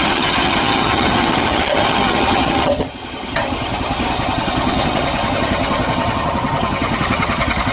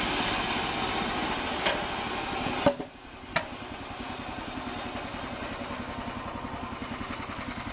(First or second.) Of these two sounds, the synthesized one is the first